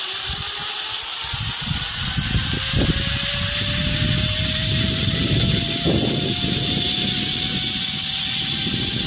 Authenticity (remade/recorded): recorded